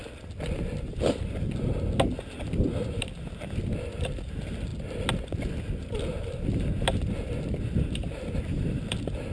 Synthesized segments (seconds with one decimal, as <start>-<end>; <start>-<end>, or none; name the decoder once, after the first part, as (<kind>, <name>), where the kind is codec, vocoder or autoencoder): none